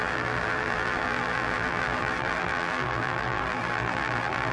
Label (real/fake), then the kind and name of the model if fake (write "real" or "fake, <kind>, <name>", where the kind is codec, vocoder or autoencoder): fake, vocoder, BigVGAN v2